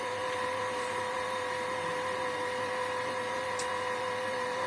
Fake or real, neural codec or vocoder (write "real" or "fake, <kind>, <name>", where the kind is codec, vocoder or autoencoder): fake, vocoder, BigVGAN v2